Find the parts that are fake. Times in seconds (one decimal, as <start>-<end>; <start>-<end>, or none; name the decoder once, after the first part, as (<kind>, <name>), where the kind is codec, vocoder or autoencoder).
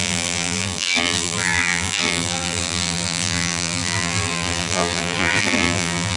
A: 0.0-6.2 (vocoder, BigVGAN v2)